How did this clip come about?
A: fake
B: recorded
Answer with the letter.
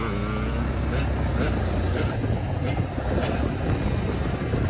B